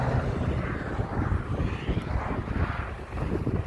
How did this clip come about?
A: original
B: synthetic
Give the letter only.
A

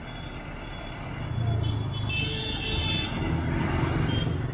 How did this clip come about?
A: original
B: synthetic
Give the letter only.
A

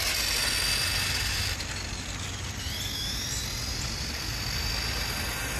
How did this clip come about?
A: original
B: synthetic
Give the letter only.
A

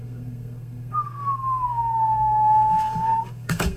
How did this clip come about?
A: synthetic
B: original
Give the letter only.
A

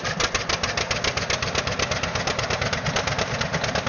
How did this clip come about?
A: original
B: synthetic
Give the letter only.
A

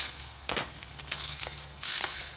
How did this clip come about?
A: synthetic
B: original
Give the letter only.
A